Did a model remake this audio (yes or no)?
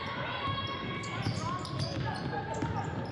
no